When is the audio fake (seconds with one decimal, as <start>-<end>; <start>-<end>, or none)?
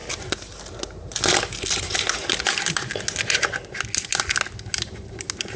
none